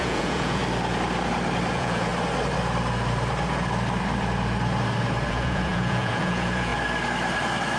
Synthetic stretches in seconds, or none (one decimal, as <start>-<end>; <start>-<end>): 0.0-0.6; 1.7-2.1; 5.3-6.7